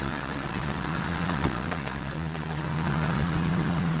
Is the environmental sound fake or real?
fake